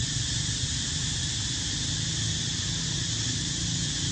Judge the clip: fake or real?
real